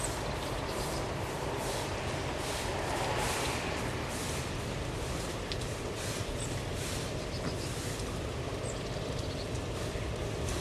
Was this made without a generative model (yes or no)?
no